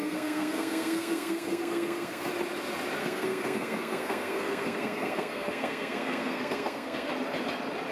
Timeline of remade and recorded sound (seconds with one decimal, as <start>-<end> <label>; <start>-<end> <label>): 0.0-2.3 remade; 2.3-3.0 recorded; 3.0-7.1 remade; 7.1-7.9 recorded